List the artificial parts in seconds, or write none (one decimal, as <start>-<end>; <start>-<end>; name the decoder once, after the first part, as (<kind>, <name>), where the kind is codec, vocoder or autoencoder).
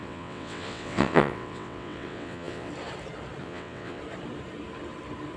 0.0-2.7 (vocoder, WaveNeXt); 3.4-4.0